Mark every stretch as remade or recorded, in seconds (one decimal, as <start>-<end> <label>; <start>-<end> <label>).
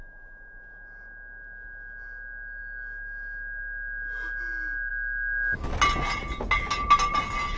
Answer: 0.0-7.6 recorded